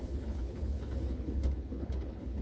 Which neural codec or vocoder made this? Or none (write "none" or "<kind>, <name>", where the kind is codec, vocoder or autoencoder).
codec, HILCodec